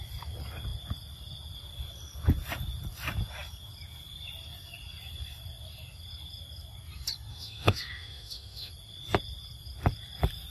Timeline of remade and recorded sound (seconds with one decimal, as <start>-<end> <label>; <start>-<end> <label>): 0.0-7.3 recorded; 7.3-8.7 remade; 8.7-10.5 recorded